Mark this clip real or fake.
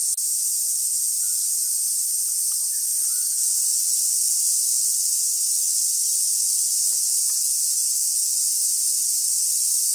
real